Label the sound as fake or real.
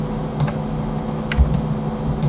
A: real